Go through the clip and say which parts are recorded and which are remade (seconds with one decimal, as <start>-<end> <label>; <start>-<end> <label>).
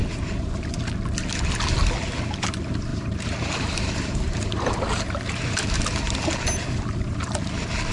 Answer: 0.0-2.9 recorded; 2.9-5.7 remade; 5.7-7.9 recorded